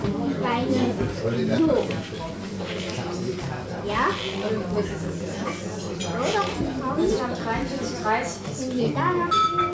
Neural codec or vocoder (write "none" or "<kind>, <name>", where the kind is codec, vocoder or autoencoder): none